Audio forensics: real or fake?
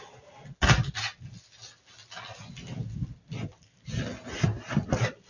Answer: real